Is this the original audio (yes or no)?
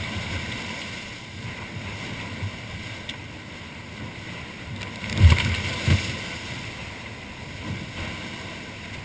yes